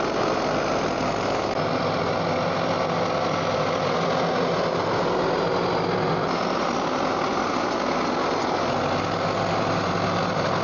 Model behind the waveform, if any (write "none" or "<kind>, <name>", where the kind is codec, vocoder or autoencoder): none